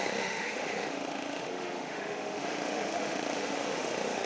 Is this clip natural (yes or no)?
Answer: no